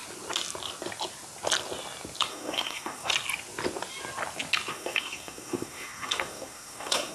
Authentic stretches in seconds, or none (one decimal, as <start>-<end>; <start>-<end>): 0.0-2.3; 3.1-4.7